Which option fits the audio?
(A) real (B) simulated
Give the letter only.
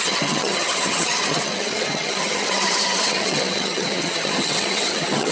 B